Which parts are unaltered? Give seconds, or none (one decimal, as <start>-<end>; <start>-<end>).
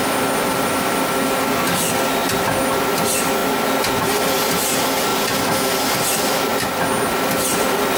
0.0-8.0